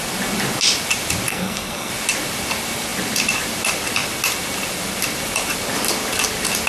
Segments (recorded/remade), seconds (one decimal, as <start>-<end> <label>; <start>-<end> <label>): 0.0-1.3 recorded; 1.3-1.9 remade; 1.9-6.7 recorded